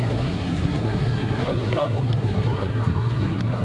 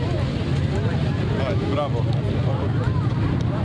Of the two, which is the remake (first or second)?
first